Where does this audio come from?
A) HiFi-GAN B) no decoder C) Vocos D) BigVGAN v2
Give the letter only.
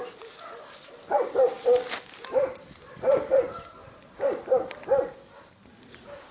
B